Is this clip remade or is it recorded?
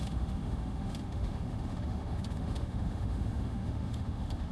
remade